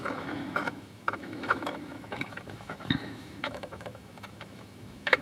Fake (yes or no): yes